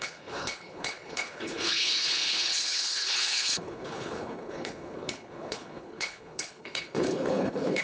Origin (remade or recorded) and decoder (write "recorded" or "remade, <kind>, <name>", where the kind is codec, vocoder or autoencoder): remade, codec, HILCodec